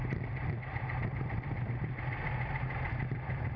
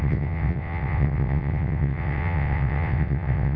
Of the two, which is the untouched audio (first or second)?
first